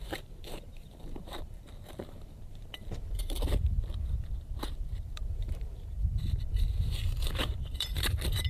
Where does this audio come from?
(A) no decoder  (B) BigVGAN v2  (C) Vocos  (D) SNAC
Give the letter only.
B